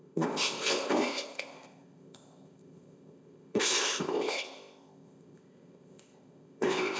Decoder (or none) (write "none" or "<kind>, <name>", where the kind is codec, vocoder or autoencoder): codec, ZipCodec